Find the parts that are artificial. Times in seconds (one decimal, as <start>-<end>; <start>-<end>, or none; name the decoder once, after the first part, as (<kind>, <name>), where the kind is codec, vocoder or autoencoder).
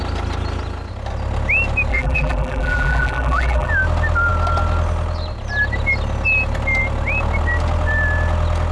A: 1.9-3.7 (vocoder, BigVGAN v2)